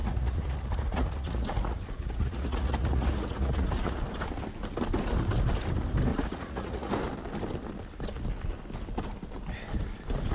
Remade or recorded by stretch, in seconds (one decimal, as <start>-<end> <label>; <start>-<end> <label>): 0.0-4.0 remade; 4.0-6.1 recorded; 6.1-6.9 remade; 6.9-10.3 recorded